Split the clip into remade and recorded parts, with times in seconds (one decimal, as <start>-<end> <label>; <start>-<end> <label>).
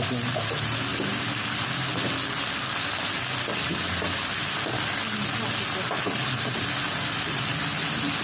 0.0-8.2 recorded